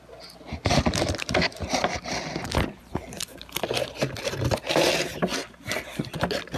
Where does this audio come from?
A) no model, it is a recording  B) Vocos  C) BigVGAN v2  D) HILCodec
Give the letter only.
A